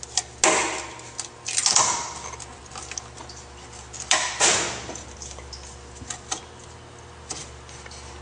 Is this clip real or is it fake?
real